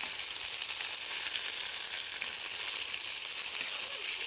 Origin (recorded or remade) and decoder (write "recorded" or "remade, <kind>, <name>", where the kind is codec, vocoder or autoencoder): recorded